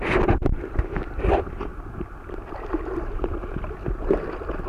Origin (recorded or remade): recorded